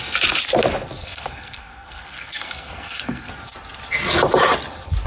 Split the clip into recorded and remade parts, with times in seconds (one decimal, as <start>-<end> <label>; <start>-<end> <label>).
0.0-1.0 recorded; 1.0-3.3 remade; 3.3-5.1 recorded

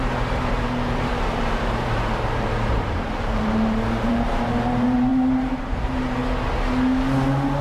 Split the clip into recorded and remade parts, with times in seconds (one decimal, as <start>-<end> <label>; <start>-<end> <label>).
0.0-6.2 remade; 6.2-7.6 recorded

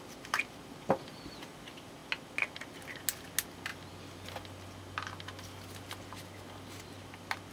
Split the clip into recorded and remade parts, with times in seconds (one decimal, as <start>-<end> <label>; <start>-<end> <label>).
0.0-7.5 recorded

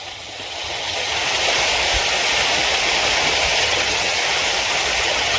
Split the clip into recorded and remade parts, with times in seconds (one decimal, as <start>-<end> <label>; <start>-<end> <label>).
0.0-1.2 remade; 1.2-3.6 recorded; 3.6-4.2 remade; 4.2-5.0 recorded; 5.0-5.4 remade

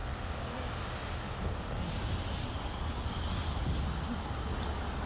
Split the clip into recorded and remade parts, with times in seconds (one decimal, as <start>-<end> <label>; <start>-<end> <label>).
0.0-5.1 recorded

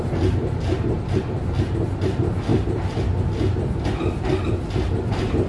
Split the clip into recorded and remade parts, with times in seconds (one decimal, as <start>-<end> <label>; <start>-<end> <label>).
0.0-5.5 recorded

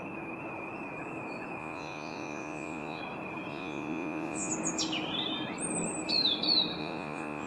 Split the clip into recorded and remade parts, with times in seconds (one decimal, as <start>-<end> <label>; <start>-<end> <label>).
0.0-1.6 recorded; 1.6-3.0 remade; 3.0-3.5 recorded; 3.5-4.5 remade; 4.5-6.8 recorded; 6.8-7.5 remade

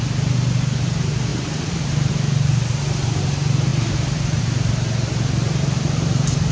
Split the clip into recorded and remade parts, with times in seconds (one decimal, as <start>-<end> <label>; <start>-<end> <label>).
0.0-1.3 recorded; 1.3-2.1 remade; 2.1-3.7 recorded; 3.7-4.4 remade; 4.4-6.5 recorded